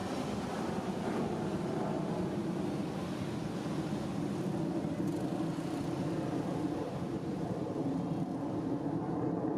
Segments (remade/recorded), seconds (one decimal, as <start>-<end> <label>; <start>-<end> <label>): 0.0-3.0 recorded; 3.0-4.1 remade; 4.1-6.9 recorded; 6.9-9.6 remade